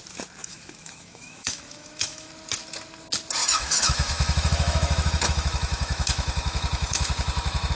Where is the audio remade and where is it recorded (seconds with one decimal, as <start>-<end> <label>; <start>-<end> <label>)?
0.0-0.4 recorded; 0.4-2.3 remade; 2.3-3.4 recorded; 3.4-7.7 remade